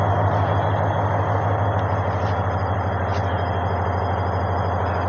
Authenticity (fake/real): real